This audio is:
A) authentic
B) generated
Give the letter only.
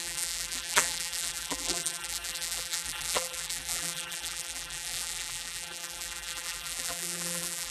B